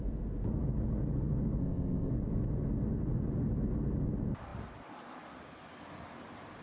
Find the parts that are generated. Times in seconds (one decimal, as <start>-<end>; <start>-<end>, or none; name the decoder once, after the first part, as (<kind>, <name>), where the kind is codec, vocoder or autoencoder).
1.6-2.1 (codec, ZipCodec)